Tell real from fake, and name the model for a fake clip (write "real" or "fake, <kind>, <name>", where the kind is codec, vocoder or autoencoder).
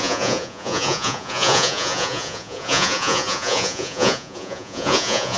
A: fake, vocoder, Vocos